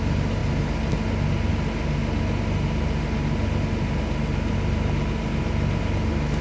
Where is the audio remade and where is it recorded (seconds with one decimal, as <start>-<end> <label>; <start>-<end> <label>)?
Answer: 0.0-6.4 recorded

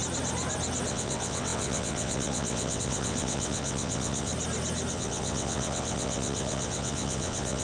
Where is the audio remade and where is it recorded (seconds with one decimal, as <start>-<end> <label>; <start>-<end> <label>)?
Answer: 0.0-0.9 recorded; 0.9-4.3 remade; 4.3-4.9 recorded; 4.9-7.6 remade

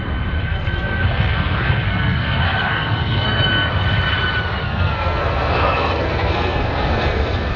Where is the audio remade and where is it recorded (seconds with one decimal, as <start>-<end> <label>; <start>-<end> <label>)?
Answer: 0.0-0.4 recorded; 0.4-3.7 remade; 3.7-4.6 recorded; 4.6-7.6 remade

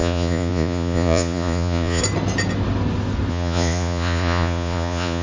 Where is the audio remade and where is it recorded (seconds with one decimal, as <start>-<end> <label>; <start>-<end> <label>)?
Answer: 0.0-2.0 remade; 2.0-3.3 recorded; 3.3-5.2 remade

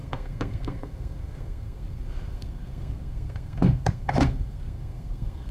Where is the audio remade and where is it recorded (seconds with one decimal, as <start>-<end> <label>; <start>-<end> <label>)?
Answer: 0.0-5.5 remade

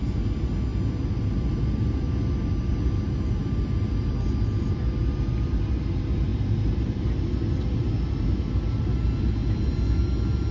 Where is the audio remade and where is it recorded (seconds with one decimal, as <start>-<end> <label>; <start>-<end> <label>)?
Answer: 0.0-10.5 recorded

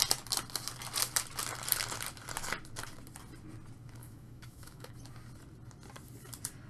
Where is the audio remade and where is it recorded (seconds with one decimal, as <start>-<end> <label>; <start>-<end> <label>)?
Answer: 0.0-4.0 recorded; 4.0-5.0 remade; 5.0-6.7 recorded